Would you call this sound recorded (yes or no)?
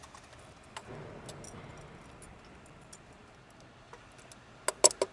yes